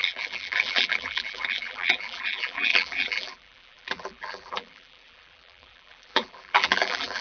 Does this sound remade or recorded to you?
remade